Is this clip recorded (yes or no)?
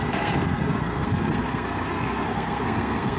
no